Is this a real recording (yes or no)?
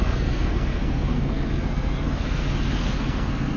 no